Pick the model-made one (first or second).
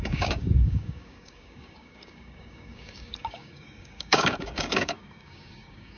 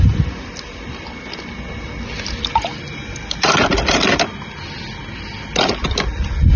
first